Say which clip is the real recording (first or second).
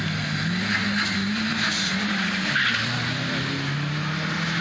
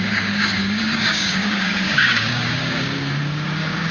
first